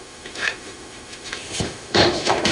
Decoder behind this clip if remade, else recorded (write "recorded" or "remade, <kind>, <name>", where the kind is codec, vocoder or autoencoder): remade, autoencoder, DAC-VAE